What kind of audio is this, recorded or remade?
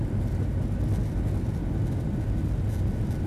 recorded